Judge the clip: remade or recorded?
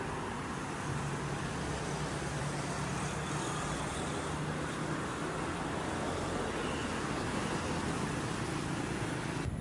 recorded